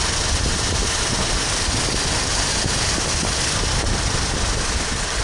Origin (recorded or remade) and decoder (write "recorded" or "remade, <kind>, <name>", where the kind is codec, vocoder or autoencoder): recorded